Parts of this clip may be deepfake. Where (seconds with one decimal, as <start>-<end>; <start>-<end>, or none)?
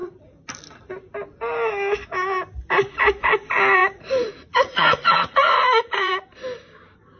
3.8-6.1